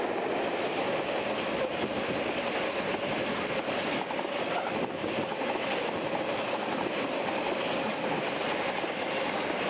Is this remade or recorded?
recorded